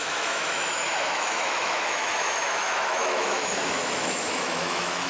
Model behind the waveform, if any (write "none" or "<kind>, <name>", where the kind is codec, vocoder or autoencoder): autoencoder, DAC-VAE